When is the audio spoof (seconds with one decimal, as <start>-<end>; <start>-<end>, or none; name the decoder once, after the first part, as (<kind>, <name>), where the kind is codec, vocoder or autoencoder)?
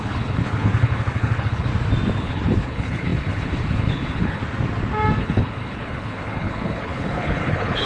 0.0-1.7 (codec, HILCodec); 2.2-4.4; 5.2-7.9